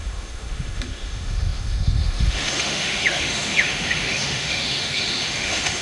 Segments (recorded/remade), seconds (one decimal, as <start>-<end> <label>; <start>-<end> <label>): 0.0-5.8 remade